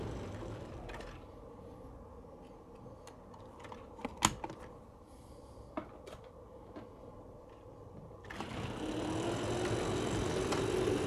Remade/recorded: recorded